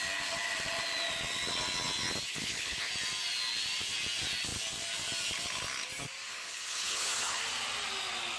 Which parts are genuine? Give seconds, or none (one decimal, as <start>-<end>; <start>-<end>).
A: 0.0-2.3; 2.9-6.3; 7.4-8.4